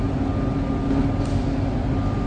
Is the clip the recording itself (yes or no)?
yes